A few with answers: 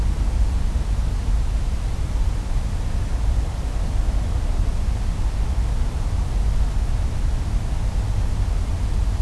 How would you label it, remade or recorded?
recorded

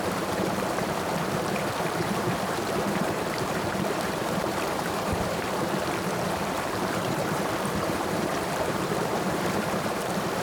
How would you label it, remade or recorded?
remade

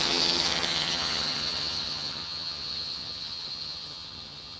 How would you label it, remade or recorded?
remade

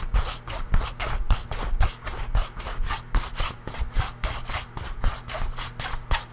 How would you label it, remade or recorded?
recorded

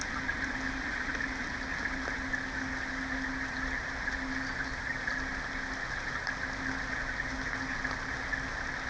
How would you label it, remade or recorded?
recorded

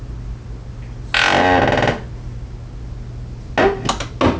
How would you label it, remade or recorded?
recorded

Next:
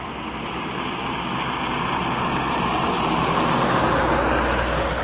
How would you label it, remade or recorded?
recorded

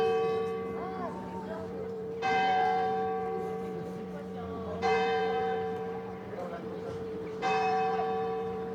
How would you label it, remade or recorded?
remade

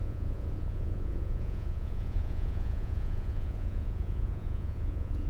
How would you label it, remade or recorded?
remade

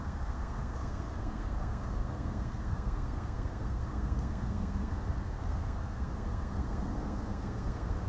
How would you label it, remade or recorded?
remade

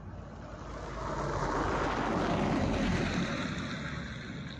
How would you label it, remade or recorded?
recorded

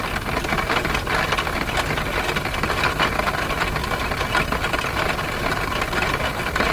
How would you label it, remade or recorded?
recorded